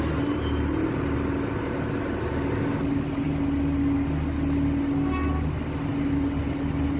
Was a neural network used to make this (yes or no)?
no